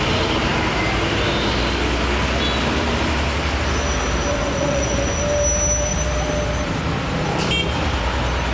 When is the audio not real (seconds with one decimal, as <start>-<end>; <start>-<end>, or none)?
4.3-5.2